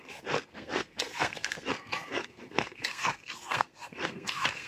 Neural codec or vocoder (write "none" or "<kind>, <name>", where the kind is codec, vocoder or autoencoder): codec, SNAC